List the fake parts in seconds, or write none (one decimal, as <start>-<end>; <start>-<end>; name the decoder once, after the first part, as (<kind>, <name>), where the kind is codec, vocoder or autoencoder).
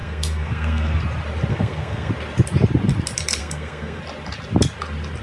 0.0-1.0 (codec, SNAC); 1.5-2.1; 3.4-4.0